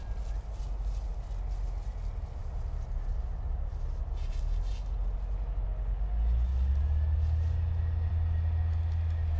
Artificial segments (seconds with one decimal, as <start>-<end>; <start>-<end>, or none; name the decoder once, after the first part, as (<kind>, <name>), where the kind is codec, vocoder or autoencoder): none